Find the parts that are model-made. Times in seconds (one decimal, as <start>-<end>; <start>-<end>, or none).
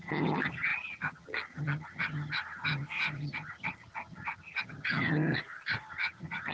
0.0-5.2; 5.9-6.5